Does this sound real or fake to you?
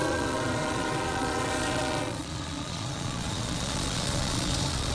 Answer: fake